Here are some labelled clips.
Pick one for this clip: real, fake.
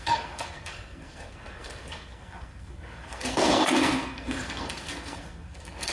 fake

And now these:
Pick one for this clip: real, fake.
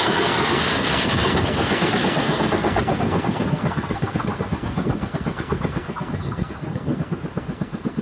fake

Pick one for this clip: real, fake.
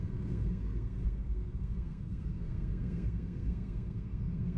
fake